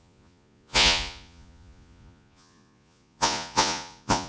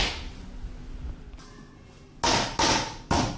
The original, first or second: second